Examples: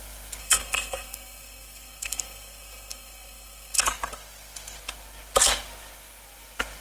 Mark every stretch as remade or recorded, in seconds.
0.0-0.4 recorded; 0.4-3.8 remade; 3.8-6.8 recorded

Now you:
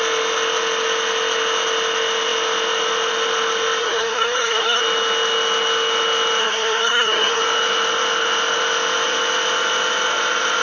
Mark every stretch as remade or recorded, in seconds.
0.0-3.8 recorded; 3.8-4.8 remade; 4.8-6.4 recorded; 6.4-7.4 remade; 7.4-10.6 recorded